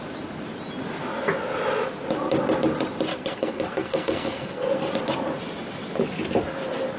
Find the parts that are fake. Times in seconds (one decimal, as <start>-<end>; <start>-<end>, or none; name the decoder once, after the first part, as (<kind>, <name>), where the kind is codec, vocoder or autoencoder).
3.1-4.9 (codec, SNAC)